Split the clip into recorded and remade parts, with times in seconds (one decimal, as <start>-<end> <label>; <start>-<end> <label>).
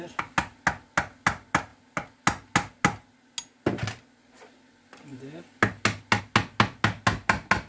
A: 0.0-7.7 recorded